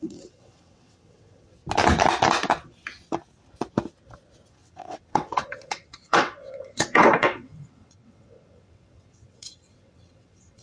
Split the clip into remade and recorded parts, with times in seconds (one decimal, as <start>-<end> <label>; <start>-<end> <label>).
0.0-1.6 remade; 1.6-4.5 recorded; 4.5-10.6 remade